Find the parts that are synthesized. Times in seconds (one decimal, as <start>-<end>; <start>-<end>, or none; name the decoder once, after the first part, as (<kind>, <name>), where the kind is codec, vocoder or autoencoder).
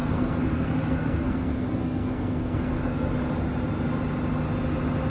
0.0-3.1 (codec, SNAC)